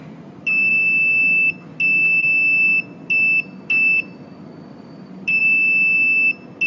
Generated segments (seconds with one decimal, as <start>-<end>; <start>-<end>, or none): 0.0-0.7; 4.7-5.4